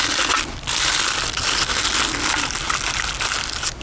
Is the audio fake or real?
real